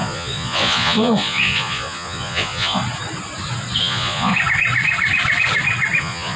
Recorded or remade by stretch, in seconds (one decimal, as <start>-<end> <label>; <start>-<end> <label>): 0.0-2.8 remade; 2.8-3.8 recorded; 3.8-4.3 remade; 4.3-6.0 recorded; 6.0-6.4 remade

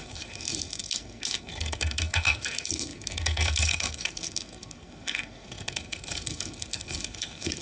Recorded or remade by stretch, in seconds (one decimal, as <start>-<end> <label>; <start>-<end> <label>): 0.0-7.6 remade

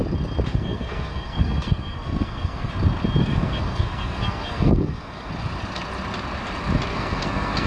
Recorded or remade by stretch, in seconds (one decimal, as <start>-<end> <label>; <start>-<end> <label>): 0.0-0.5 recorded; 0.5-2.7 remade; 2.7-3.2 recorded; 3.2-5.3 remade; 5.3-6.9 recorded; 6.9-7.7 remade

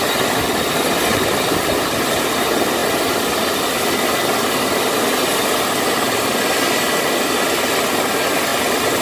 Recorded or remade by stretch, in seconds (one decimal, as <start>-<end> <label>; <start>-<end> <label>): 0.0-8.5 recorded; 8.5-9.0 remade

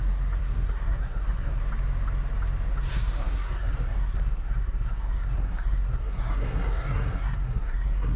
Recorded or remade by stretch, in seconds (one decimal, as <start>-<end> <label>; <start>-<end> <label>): 0.0-0.4 recorded; 0.4-1.6 remade; 1.6-2.9 recorded; 2.9-8.2 remade

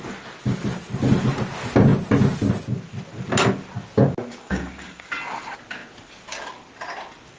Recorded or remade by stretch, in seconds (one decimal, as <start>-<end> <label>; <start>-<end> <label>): 0.0-4.4 recorded; 4.4-5.1 remade; 5.1-7.4 recorded